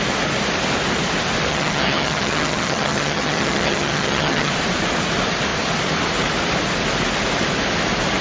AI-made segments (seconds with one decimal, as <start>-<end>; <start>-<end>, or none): 1.5-4.5